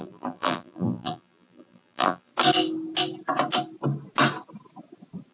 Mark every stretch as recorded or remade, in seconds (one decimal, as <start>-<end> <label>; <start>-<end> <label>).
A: 0.0-2.3 remade; 2.3-5.3 recorded